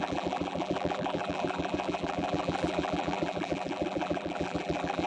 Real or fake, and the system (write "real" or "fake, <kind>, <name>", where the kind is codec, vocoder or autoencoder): fake, vocoder, BigVGAN v2